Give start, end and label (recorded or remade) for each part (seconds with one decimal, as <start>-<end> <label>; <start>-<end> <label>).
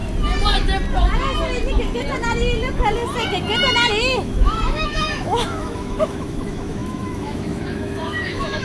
0.0-3.9 recorded; 3.9-8.6 remade